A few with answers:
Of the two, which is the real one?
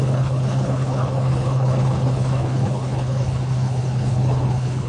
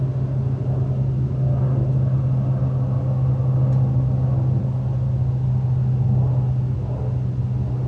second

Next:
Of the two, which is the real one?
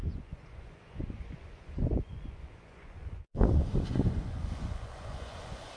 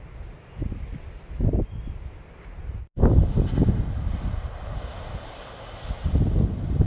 second